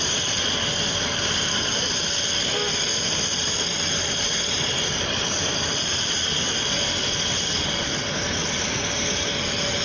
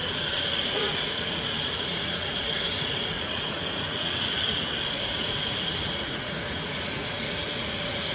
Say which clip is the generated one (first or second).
second